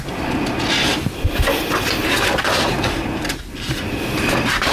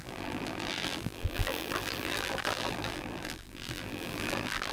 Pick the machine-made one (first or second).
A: second